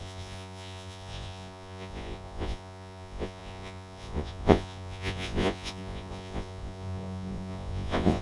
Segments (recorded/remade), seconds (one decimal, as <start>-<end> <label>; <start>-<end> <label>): 0.0-8.2 remade